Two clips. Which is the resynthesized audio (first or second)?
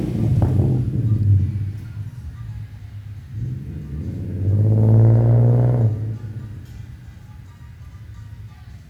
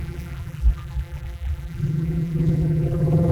second